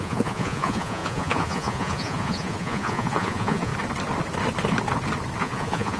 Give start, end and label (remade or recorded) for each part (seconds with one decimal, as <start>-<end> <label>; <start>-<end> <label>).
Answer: 0.0-3.7 remade; 3.7-5.4 recorded; 5.4-6.0 remade